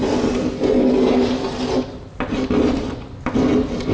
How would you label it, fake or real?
real